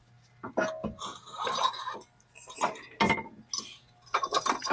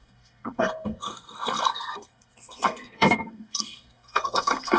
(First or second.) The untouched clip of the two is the first